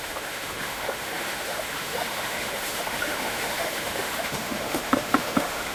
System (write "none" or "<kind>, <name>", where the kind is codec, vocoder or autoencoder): autoencoder, DAC-VAE